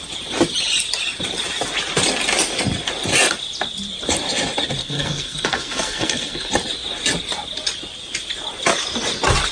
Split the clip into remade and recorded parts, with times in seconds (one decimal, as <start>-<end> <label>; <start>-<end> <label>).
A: 0.0-4.8 recorded; 4.8-6.5 remade; 6.5-9.5 recorded